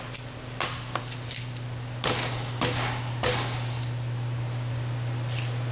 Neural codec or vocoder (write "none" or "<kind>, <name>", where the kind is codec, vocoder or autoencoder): none